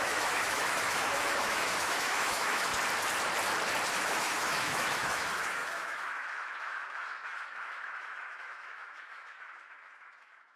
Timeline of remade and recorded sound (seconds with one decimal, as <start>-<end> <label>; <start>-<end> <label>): 0.0-2.7 remade; 2.7-3.9 recorded; 3.9-10.6 remade